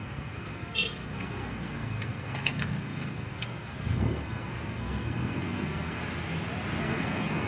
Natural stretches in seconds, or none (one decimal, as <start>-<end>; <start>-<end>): 6.0-6.8